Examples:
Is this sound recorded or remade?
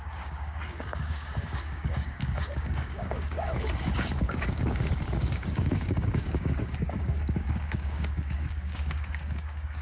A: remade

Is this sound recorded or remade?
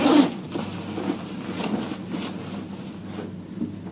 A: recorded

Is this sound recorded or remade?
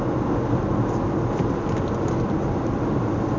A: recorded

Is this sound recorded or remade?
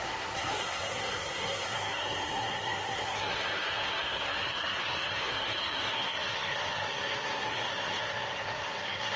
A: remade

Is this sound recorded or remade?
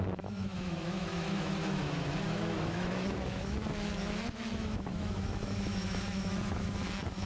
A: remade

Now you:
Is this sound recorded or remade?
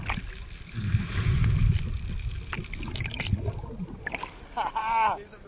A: recorded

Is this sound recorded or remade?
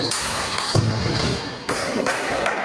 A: remade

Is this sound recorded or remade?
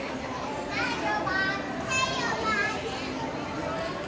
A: recorded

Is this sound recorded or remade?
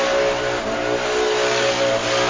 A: recorded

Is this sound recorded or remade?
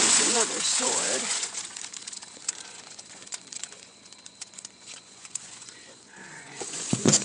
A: remade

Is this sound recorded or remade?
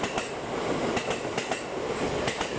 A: recorded